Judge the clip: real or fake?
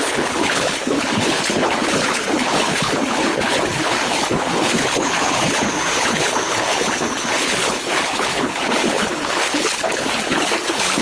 fake